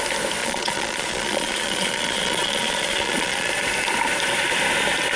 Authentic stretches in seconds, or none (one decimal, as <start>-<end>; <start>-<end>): 0.0-0.4; 3.5-5.2